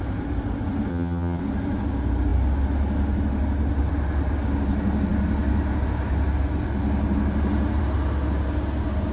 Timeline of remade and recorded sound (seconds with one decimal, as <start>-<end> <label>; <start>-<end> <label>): 0.0-0.9 recorded; 0.9-1.4 remade; 1.4-9.1 recorded